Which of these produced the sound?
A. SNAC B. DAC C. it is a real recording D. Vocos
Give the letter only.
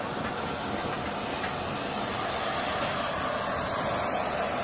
C